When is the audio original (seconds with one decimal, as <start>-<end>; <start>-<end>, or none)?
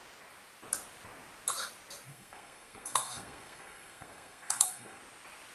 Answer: 0.0-2.1; 5.0-5.5